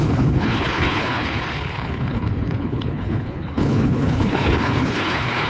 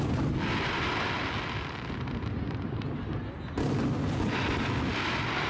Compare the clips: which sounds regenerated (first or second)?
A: first